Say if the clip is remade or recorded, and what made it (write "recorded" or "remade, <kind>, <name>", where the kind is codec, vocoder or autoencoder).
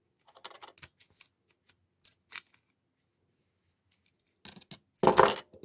recorded